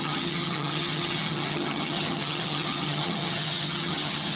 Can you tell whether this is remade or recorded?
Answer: remade